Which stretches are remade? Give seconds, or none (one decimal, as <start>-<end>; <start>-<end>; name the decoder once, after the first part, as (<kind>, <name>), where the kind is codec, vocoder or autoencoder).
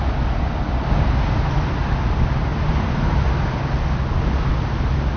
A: none